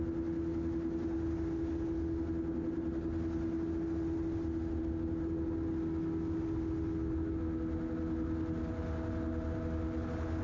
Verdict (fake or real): real